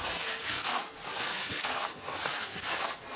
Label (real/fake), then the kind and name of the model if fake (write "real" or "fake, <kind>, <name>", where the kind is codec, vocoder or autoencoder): fake, codec, SNAC